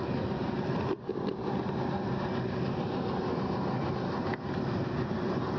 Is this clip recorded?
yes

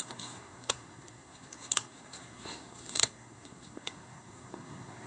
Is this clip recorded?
no